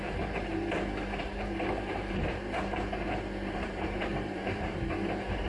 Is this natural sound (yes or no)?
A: no